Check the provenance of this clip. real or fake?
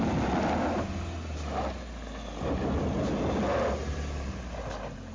real